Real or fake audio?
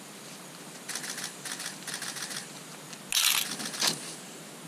real